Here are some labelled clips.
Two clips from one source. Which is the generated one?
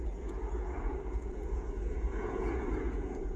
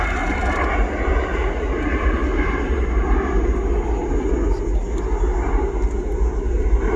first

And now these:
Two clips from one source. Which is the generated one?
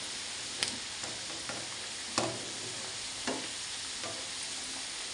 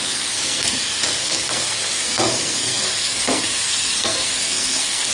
second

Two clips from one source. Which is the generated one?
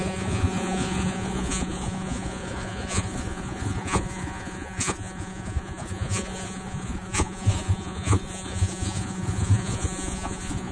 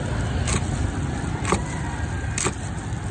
first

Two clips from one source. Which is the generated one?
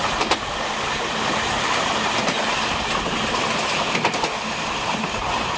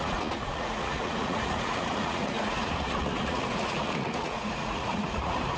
second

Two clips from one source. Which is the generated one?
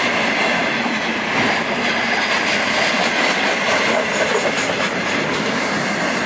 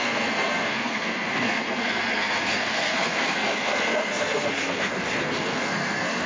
second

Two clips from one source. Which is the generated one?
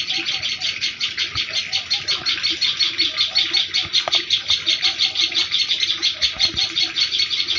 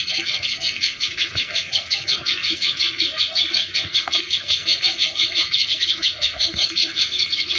second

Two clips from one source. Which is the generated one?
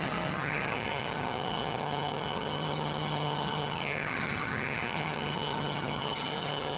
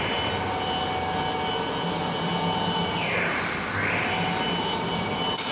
first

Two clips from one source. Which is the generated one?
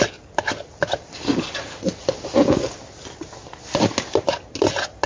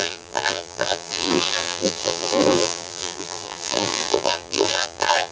second